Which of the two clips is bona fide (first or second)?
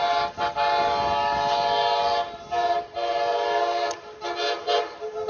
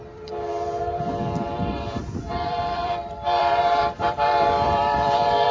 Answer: first